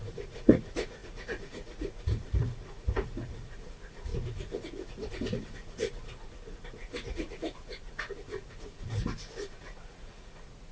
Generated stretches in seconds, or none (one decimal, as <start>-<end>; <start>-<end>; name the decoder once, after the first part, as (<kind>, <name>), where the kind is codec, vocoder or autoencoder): 0.0-10.7 (vocoder, Vocos)